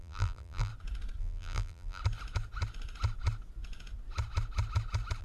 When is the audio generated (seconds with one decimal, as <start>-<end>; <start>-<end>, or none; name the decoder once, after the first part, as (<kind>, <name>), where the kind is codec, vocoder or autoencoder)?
0.0-0.7 (vocoder, BigVGAN v2); 1.2-2.0